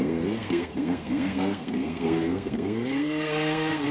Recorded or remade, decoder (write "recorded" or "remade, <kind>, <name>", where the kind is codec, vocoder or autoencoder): remade, codec, SNAC